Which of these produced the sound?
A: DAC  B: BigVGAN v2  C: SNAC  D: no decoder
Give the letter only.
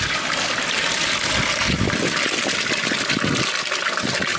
D